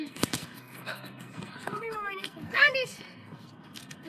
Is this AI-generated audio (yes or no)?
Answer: yes